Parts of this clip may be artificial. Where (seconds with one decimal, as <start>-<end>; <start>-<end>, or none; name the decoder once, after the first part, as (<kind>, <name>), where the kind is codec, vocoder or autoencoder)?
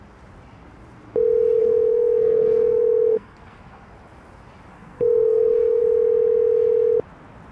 1.6-3.9 (codec, SNAC); 4.7-5.8